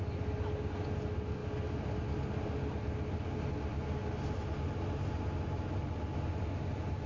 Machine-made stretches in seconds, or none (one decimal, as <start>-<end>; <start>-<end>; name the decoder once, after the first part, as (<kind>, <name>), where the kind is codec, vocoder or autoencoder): none